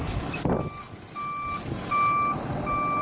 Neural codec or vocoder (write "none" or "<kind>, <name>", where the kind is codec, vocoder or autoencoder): none